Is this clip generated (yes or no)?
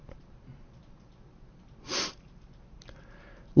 no